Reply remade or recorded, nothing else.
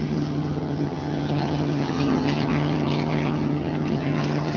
remade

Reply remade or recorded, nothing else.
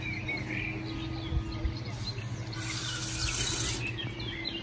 recorded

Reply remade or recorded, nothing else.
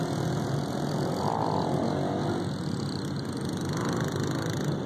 recorded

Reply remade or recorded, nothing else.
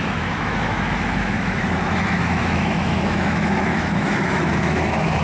remade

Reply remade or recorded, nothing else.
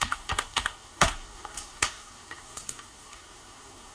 remade